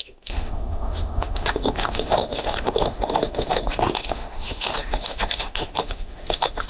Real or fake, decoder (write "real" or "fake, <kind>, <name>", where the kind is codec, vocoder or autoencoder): fake, autoencoder, DAC-VAE